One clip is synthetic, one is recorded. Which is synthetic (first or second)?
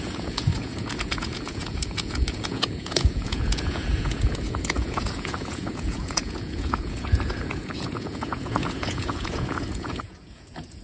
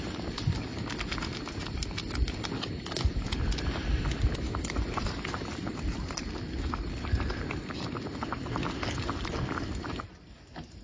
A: first